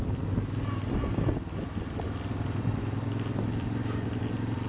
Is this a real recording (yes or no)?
yes